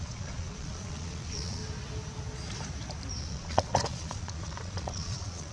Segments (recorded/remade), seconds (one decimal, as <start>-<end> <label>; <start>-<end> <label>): 0.0-1.6 remade; 1.6-3.2 recorded; 3.2-5.5 remade